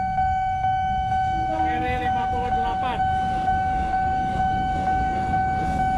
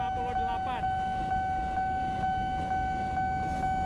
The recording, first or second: second